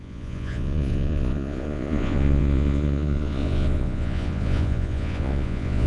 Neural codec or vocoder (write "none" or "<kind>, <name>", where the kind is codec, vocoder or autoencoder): vocoder, Vocos